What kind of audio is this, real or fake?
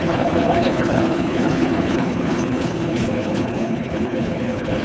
fake